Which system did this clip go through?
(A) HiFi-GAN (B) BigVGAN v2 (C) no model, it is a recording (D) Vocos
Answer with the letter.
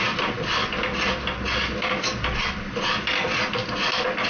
C